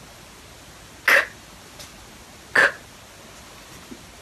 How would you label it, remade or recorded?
recorded